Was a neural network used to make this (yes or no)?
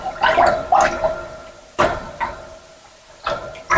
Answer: no